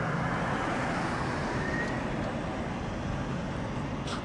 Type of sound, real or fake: real